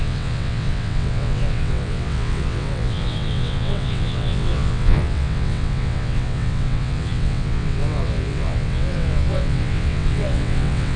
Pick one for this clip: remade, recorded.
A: remade